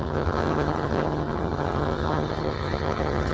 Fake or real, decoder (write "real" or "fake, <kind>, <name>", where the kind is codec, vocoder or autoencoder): fake, vocoder, HiFi-GAN